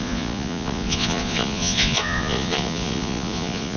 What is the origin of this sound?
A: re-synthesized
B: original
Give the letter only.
A